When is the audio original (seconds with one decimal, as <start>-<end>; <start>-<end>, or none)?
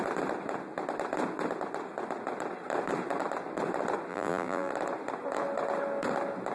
0.0-4.1; 4.7-6.5